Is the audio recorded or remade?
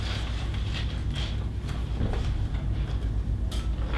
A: recorded